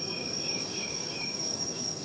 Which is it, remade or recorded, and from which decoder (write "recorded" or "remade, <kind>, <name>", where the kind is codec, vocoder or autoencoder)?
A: remade, codec, DAC